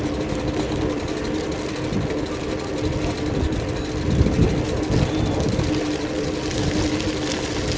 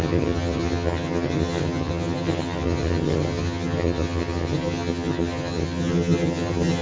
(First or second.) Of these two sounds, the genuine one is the first